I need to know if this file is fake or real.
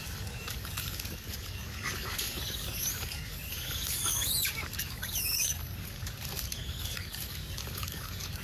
fake